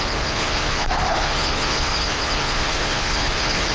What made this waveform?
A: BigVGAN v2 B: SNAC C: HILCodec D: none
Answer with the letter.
C